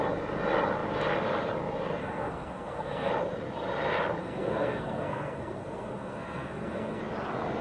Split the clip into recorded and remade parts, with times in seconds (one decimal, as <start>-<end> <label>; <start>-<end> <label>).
0.0-2.0 recorded; 2.0-3.1 remade; 3.1-4.2 recorded; 4.2-7.0 remade; 7.0-7.6 recorded